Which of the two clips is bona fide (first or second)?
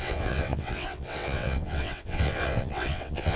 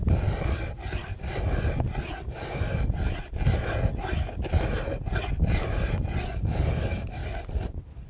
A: second